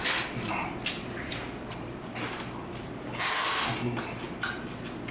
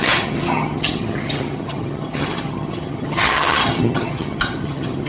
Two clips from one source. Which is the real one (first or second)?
first